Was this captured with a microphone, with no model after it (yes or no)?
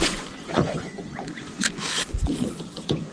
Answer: no